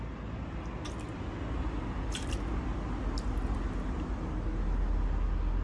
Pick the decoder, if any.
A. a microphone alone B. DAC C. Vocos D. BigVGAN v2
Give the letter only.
A